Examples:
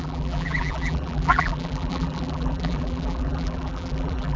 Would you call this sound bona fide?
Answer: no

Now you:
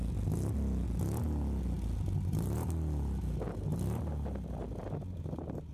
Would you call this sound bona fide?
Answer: yes